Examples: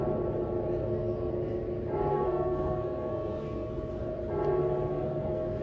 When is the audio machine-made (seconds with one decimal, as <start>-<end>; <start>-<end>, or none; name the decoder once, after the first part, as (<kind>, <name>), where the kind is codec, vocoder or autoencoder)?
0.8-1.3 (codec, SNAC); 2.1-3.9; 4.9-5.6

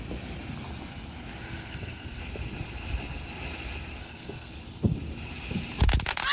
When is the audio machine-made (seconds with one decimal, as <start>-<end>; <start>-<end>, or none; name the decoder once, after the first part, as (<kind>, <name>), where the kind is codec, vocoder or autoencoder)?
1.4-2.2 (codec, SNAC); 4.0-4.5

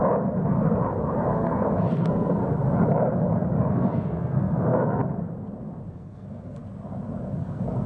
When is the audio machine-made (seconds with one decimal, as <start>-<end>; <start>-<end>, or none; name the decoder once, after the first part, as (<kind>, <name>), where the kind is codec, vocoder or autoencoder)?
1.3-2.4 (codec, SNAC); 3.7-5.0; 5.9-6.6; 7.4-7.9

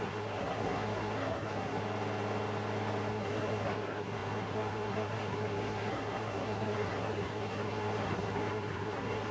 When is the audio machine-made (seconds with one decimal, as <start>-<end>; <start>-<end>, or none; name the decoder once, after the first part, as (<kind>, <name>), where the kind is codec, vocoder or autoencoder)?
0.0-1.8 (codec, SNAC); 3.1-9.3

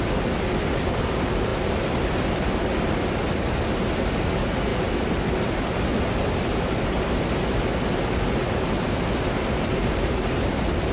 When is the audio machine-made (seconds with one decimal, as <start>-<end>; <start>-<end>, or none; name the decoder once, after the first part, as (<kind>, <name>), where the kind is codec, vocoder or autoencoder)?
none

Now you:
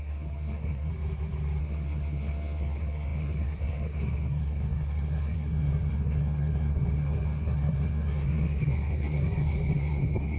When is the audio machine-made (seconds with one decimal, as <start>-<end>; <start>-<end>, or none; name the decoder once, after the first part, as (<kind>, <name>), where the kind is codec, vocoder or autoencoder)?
0.0-0.9 (codec, SNAC); 1.6-10.4

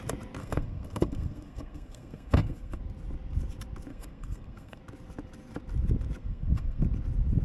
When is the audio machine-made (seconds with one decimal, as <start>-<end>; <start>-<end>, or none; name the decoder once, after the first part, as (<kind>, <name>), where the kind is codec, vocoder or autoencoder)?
0.4-2.8 (codec, SNAC); 3.9-4.8; 6.2-6.8